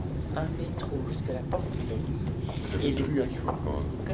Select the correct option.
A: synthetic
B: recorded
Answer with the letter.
A